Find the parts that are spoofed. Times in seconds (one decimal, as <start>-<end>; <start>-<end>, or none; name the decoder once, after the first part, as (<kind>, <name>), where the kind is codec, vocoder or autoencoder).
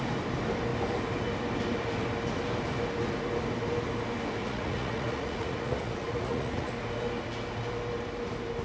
4.4-6.7 (vocoder, Vocos)